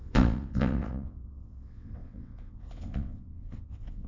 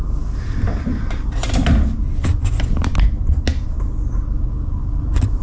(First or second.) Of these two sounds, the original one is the second